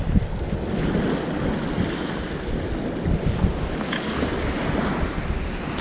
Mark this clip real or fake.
real